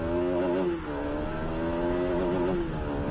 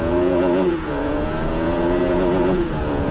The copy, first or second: second